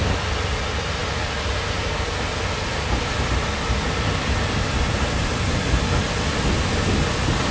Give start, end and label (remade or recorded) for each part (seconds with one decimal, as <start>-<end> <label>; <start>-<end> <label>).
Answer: 0.0-7.5 recorded